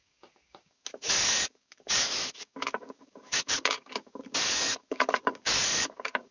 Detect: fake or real fake